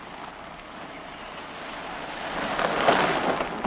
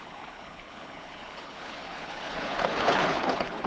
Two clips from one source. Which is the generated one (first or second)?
second